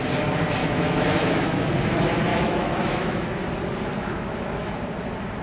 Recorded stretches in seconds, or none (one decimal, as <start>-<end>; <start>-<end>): 0.0-0.6; 1.6-2.3; 3.4-3.9; 4.8-5.4